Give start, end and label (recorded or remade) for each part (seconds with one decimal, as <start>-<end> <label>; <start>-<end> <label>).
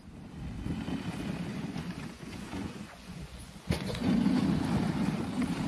0.0-1.5 recorded; 1.5-4.4 remade; 4.4-5.7 recorded